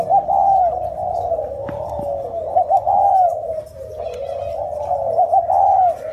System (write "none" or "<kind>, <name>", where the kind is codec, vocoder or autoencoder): none